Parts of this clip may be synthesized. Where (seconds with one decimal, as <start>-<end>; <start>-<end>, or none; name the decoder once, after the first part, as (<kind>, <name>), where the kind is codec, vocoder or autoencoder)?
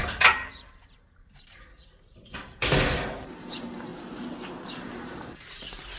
0.0-3.9 (vocoder, BigVGAN v2); 4.8-6.0